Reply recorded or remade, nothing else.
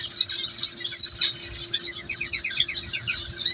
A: recorded